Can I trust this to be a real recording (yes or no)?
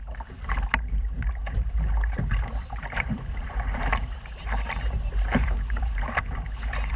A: no